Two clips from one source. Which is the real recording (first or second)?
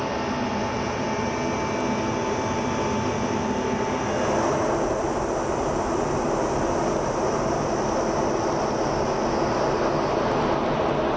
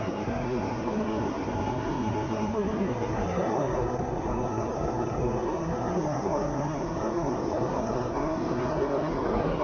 first